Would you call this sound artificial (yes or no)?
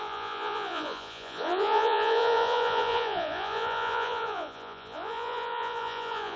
yes